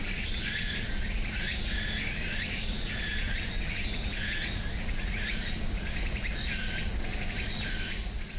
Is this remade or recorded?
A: remade